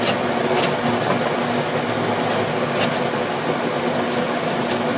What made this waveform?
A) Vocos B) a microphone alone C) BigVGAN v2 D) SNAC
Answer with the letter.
B